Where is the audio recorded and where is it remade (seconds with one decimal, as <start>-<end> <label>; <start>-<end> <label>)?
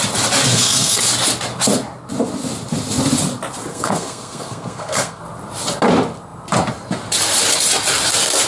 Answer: 0.0-0.5 recorded; 0.5-1.0 remade; 1.0-3.7 recorded; 3.7-5.2 remade; 5.2-8.5 recorded